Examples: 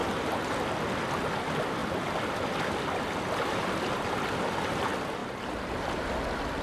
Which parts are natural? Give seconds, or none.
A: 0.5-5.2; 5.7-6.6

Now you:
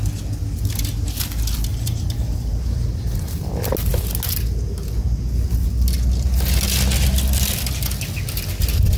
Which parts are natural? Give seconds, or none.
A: 0.0-1.7; 3.5-9.0

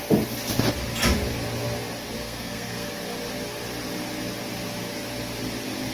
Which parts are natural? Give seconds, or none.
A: 0.0-2.2; 2.9-5.9

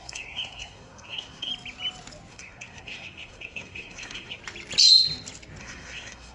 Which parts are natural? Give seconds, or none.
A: 1.5-2.3; 4.4-5.6